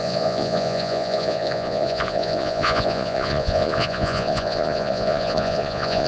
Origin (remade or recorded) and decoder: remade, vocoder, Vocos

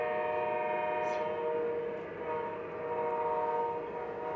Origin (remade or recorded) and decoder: recorded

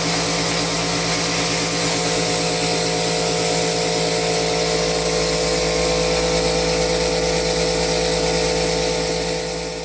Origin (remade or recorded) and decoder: recorded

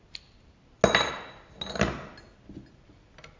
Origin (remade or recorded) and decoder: recorded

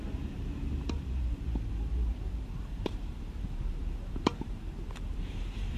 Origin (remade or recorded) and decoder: remade, vocoder, BigVGAN v2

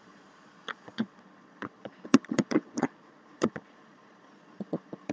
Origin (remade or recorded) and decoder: remade, vocoder, Vocos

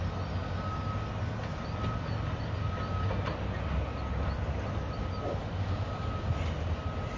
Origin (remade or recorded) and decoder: recorded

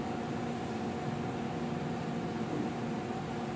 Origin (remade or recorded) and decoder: recorded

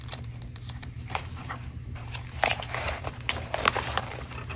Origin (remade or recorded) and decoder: remade, vocoder, BigVGAN v2